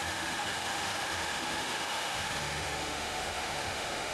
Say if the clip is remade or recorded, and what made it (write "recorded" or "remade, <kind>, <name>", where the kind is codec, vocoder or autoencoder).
remade, autoencoder, DAC-VAE